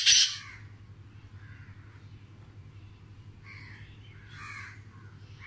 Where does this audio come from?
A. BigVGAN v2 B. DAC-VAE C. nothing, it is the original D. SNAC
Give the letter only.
A